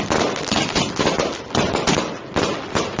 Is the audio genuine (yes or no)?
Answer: yes